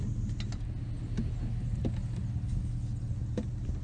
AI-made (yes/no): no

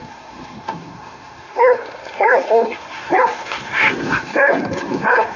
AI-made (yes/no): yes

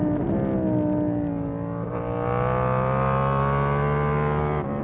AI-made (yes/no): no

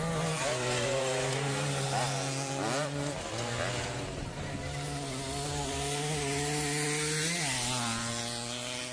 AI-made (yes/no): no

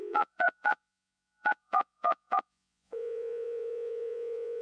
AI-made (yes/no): yes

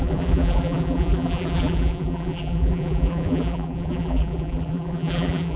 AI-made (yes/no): yes